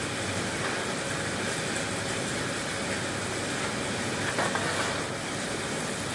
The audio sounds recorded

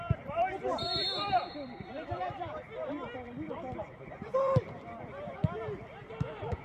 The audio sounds remade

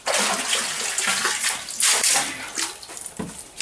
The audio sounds recorded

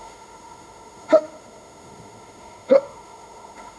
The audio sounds remade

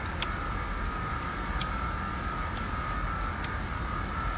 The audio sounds recorded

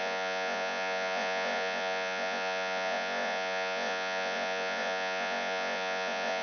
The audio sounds remade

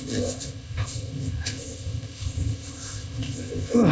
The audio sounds remade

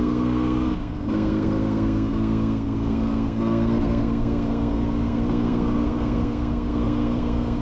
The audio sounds remade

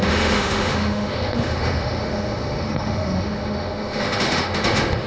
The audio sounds remade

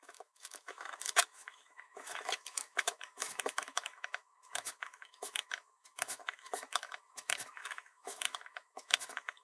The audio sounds remade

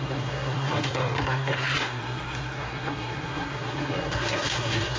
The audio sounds remade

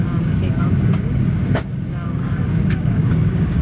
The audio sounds remade